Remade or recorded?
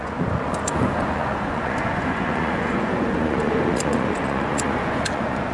remade